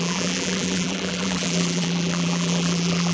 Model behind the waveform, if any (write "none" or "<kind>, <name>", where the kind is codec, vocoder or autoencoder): vocoder, BigVGAN v2